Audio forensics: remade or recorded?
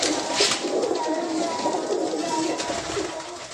recorded